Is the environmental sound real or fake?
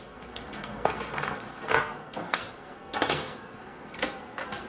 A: fake